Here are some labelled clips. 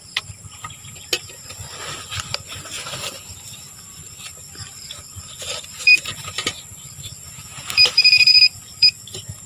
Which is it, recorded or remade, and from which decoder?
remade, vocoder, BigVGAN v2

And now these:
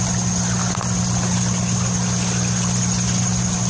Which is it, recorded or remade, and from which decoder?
recorded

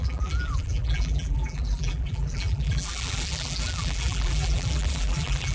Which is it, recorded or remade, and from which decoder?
remade, vocoder, BigVGAN v2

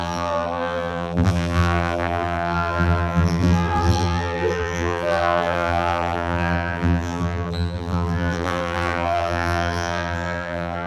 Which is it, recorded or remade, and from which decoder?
remade, vocoder, BigVGAN v2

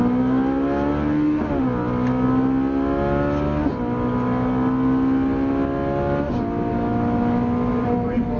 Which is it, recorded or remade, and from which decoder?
recorded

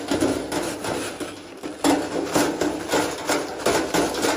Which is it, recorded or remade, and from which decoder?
recorded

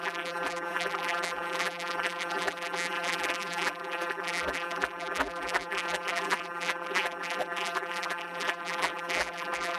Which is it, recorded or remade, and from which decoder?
remade, vocoder, BigVGAN v2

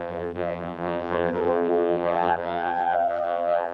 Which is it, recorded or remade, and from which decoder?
remade, vocoder, BigVGAN v2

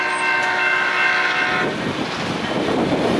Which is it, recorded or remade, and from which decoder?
recorded